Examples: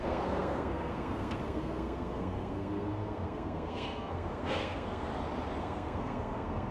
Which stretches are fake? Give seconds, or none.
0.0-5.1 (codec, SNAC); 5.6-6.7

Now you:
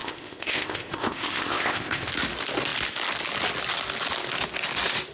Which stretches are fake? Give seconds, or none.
0.0-2.1 (codec, ZipCodec)